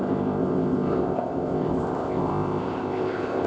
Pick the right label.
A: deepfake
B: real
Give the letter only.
A